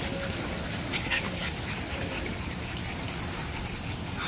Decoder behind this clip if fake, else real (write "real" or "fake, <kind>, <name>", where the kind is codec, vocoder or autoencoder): real